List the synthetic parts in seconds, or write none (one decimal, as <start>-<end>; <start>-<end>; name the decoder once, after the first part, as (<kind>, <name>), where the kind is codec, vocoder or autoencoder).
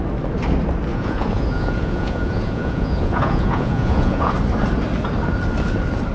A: 0.9-4.3 (vocoder, Vocos)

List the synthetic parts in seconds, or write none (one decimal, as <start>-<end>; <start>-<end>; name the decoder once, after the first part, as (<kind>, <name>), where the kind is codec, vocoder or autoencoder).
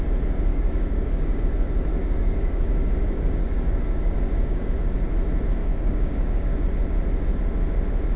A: 0.5-1.4 (codec, DAC); 1.9-4.7; 5.6-6.6